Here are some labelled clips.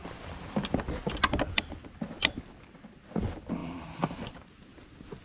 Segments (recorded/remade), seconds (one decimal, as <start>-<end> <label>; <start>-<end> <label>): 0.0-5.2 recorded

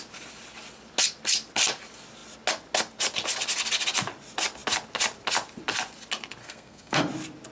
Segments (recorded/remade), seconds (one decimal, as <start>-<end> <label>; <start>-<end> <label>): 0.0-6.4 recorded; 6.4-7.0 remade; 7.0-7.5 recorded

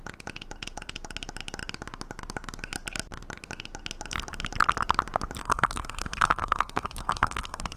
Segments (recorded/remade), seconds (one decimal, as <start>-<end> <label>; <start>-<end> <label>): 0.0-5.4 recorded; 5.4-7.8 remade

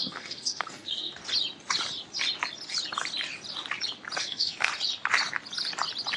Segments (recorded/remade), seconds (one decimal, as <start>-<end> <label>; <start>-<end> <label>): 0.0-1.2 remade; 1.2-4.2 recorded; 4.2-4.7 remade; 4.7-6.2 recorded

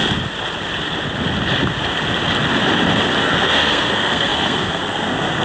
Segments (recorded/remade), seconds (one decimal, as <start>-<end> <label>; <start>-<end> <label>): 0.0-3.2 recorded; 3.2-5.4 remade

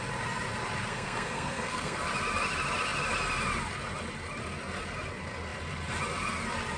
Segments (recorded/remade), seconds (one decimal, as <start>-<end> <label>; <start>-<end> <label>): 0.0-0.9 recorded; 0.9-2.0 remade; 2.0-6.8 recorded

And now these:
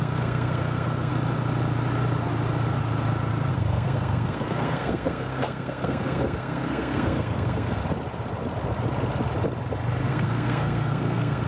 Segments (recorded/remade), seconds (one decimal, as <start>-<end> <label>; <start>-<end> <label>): 0.0-1.1 remade; 1.1-3.5 recorded; 3.5-7.8 remade; 7.8-10.1 recorded; 10.1-11.5 remade

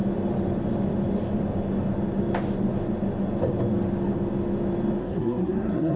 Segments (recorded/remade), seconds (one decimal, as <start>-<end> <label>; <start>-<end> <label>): 0.0-5.0 recorded; 5.0-6.0 remade